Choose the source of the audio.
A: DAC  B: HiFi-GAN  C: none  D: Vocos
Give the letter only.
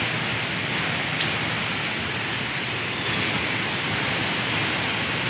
C